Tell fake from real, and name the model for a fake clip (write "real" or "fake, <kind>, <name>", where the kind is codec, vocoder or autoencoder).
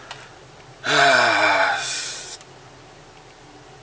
real